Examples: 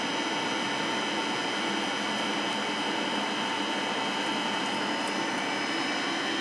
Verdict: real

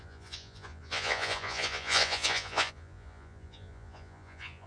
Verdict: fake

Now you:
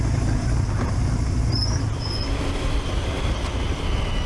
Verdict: real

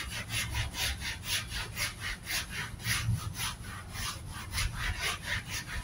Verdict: real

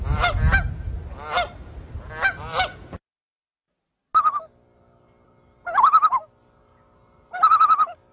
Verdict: real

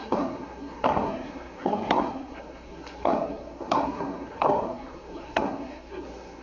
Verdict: fake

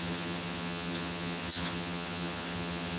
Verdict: fake